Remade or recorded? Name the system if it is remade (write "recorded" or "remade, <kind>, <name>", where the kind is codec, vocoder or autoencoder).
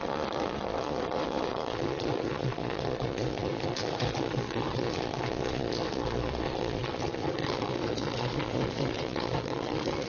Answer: remade, vocoder, Vocos